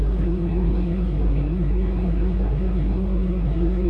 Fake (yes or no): yes